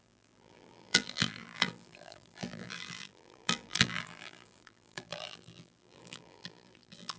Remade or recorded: remade